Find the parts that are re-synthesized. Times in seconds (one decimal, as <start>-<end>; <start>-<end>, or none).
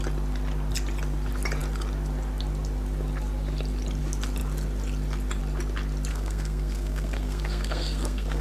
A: 6.1-8.4